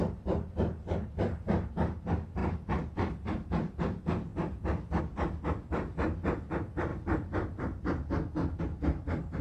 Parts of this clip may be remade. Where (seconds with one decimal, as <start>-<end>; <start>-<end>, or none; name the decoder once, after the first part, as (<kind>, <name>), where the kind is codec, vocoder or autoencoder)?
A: 2.4-3.5 (vocoder, BigVGAN v2)